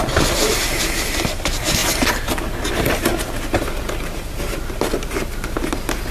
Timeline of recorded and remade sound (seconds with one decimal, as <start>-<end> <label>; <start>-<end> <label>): 0.0-6.1 recorded